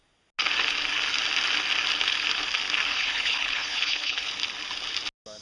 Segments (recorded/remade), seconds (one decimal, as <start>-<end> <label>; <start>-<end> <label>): 0.0-2.9 recorded; 2.9-4.3 remade; 4.3-5.4 recorded